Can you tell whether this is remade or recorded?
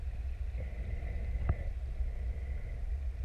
recorded